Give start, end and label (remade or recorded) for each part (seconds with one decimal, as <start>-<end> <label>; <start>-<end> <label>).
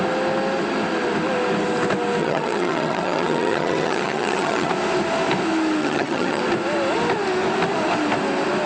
0.0-2.2 recorded; 2.2-4.7 remade; 4.7-5.8 recorded; 5.8-6.4 remade; 6.4-8.7 recorded